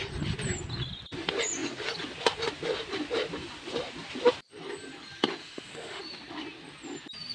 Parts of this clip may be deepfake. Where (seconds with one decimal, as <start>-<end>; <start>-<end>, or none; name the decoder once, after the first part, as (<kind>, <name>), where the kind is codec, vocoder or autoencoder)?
5.4-6.0 (autoencoder, DAC-VAE)